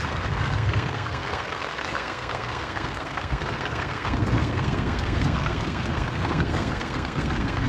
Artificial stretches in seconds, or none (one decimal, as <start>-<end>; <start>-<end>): 0.0-7.7